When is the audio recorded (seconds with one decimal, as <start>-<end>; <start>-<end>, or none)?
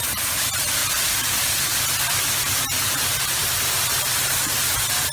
0.0-0.8; 1.7-3.1; 4.3-5.1